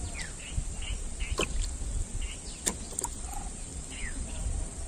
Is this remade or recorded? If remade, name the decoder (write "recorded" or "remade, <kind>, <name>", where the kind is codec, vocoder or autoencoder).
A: recorded